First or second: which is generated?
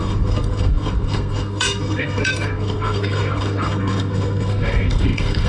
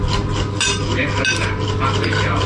first